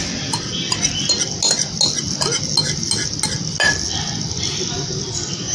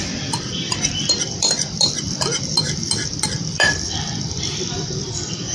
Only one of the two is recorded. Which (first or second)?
first